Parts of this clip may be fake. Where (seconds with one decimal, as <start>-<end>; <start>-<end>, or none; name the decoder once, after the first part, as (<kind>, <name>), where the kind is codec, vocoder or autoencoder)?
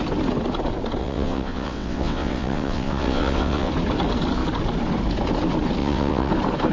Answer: 1.0-3.7 (vocoder, WaveNeXt); 5.8-6.3